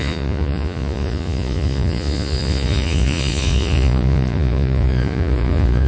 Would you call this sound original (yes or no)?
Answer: no